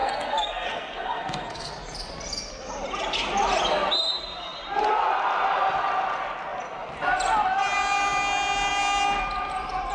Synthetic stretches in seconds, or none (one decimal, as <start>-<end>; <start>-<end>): 0.0-1.7